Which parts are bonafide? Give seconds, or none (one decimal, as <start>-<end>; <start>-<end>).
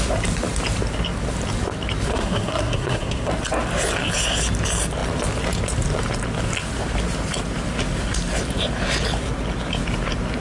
0.0-2.1; 3.3-10.4